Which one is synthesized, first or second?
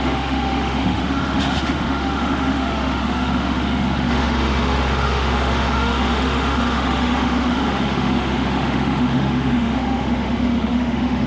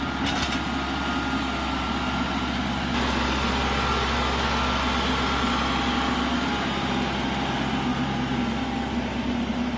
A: first